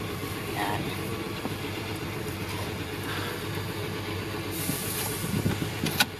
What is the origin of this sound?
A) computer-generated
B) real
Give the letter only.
A